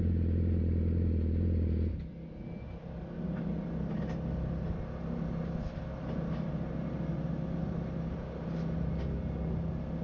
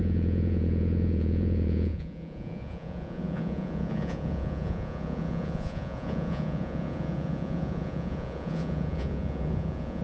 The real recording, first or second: first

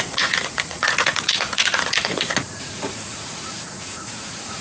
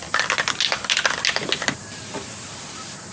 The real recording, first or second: second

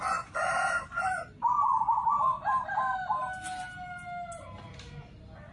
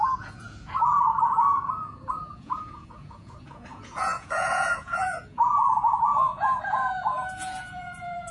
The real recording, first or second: first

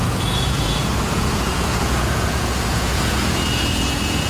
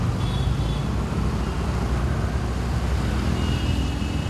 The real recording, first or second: second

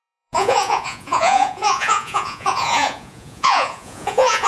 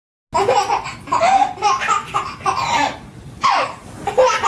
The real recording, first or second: second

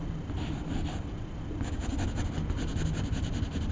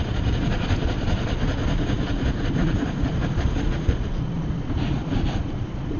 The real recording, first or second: first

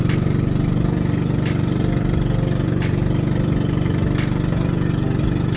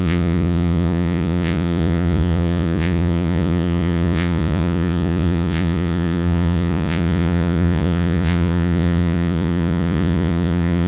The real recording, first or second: first